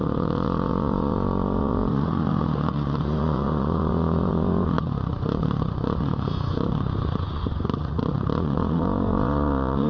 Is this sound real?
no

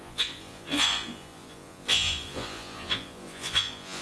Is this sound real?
no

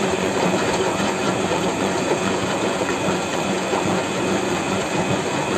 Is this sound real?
no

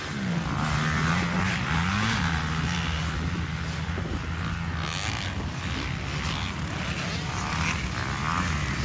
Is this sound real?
yes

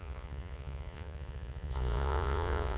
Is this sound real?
no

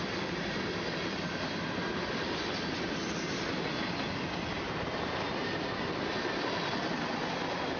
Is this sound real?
yes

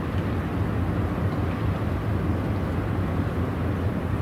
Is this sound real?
yes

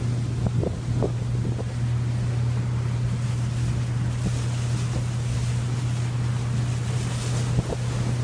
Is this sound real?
yes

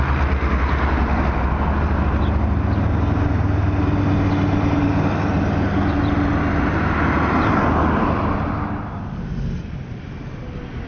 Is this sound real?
yes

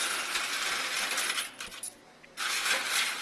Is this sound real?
yes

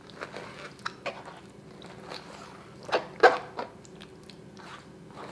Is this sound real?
yes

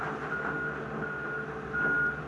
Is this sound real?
yes